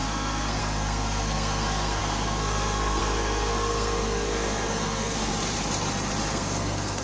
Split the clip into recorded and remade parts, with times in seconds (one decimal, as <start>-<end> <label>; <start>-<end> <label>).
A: 0.0-5.3 remade; 5.3-6.3 recorded; 6.3-7.0 remade